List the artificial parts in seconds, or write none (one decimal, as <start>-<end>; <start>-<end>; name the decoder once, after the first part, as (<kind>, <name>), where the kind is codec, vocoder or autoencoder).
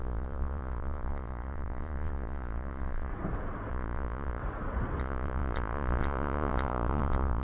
0.0-3.1 (vocoder, Vocos); 3.7-4.4; 5.0-7.4